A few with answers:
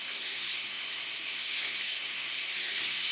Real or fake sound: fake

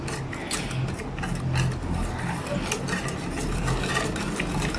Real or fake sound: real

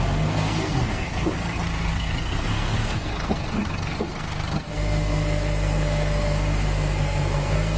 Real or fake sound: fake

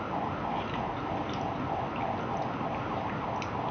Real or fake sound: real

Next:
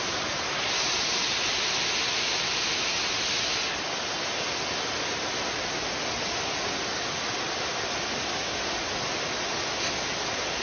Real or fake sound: real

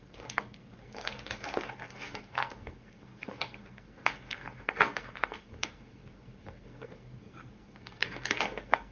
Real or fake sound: fake